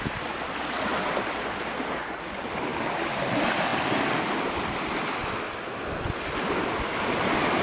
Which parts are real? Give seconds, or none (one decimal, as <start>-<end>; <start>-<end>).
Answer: 0.0-0.9; 1.9-2.7; 3.2-7.6